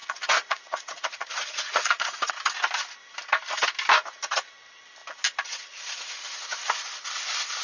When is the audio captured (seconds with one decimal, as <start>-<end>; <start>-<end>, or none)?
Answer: 2.3-7.6